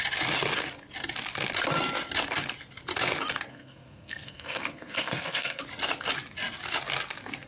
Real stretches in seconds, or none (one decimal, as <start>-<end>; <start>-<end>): 0.0-3.5; 5.6-7.5